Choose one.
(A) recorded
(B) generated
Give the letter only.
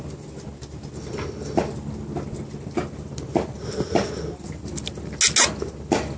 A